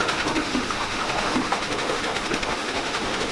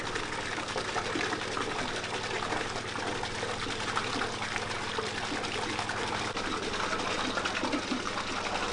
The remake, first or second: first